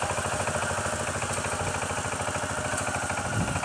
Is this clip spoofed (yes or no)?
no